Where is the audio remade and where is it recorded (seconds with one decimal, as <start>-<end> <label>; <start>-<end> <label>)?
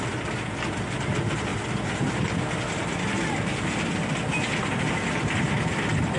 0.0-6.2 recorded